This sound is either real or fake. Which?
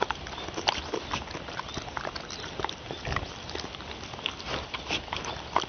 real